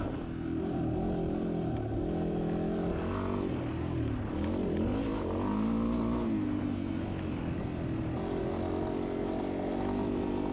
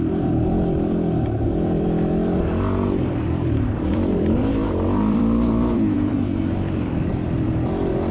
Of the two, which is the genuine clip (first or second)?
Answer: first